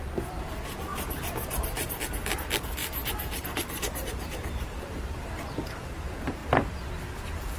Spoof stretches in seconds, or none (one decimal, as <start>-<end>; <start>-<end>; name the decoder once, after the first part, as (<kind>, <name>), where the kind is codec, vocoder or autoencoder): 0.9-2.0 (vocoder, BigVGAN v2); 2.8-5.3